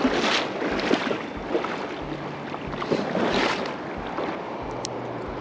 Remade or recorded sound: recorded